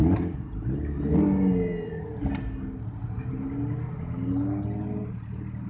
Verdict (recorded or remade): recorded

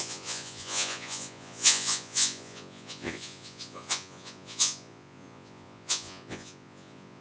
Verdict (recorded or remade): remade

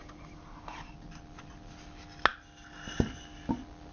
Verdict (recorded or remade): recorded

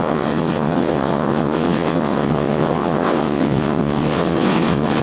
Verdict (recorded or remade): remade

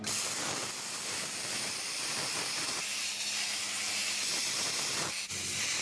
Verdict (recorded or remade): recorded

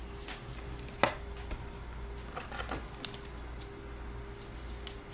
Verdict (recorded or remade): recorded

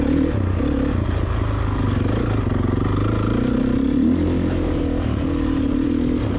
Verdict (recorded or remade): recorded